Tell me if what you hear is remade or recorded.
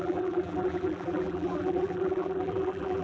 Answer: remade